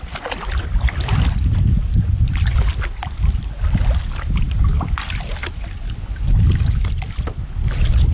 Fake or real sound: real